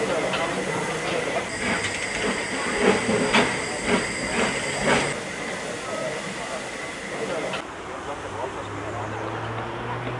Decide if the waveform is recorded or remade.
recorded